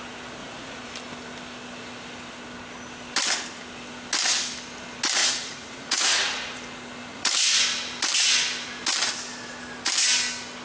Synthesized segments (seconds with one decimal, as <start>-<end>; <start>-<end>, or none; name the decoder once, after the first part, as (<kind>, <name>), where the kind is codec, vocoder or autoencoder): 0.4-0.9 (vocoder, Vocos); 5.2-6.6; 7.1-7.6